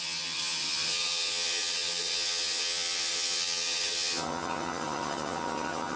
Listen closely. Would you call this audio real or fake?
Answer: fake